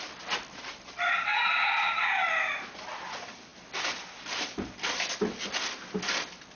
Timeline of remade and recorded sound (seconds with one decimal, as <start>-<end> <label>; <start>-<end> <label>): 0.0-6.6 recorded